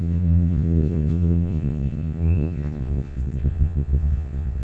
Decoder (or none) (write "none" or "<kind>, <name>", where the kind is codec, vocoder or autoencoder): vocoder, Vocos